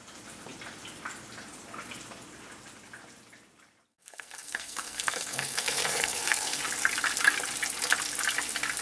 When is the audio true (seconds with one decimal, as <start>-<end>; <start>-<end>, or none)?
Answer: 0.0-3.9; 6.6-8.8

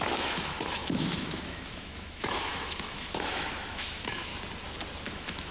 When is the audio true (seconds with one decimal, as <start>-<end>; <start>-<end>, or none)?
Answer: 4.3-5.1

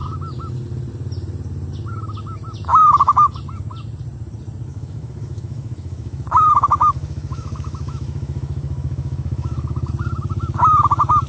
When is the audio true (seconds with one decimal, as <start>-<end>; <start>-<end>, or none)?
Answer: 0.0-2.7; 3.4-4.7; 9.9-11.3

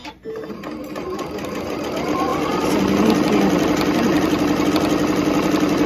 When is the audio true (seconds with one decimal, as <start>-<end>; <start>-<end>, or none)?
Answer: 0.0-5.9

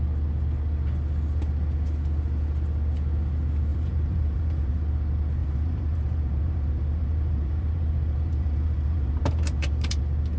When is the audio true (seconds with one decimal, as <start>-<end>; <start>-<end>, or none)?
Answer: 0.0-3.7; 4.7-5.4; 10.0-10.4

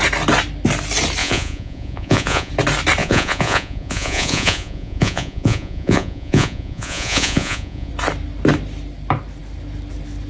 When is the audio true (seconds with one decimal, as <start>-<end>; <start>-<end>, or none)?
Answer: 0.0-1.2; 2.5-3.0; 7.9-10.3

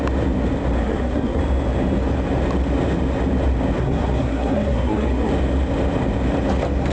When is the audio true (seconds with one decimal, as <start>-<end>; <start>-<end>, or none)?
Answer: 0.0-0.8; 1.4-3.8; 5.3-6.9